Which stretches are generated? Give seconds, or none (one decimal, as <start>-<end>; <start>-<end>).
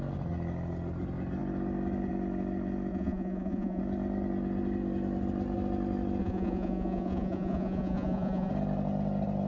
2.9-3.8; 6.2-8.5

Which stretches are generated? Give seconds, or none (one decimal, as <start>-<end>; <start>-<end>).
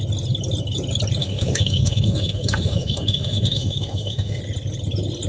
1.2-4.4